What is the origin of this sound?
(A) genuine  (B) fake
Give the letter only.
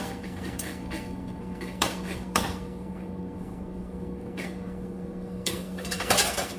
B